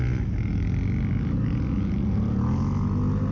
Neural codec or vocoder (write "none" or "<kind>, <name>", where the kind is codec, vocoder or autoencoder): none